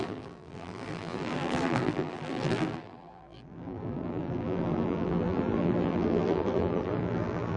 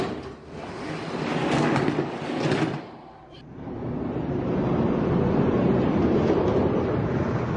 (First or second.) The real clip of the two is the second